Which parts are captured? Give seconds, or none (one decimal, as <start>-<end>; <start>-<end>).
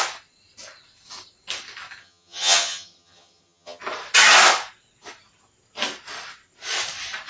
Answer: 0.0-2.0; 3.8-7.3